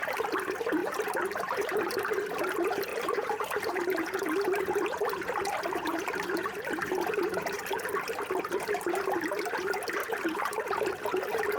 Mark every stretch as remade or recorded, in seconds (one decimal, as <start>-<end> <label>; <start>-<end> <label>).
0.0-2.9 recorded; 2.9-4.6 remade; 4.6-10.0 recorded; 10.0-11.6 remade